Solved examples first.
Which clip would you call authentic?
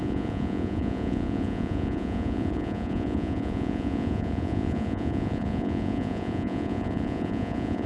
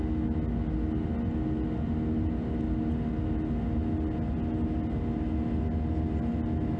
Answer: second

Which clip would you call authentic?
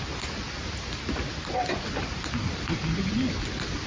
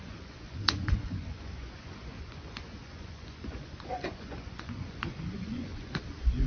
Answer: first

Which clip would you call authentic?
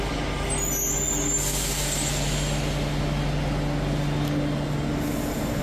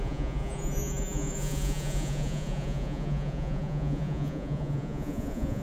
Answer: first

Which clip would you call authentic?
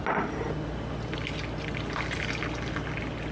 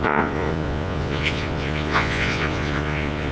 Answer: first